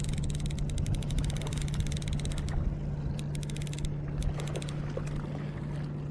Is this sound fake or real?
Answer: real